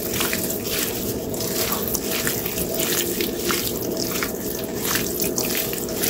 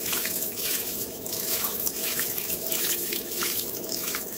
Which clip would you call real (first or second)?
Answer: first